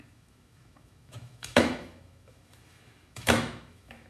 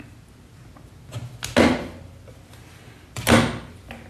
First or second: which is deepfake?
first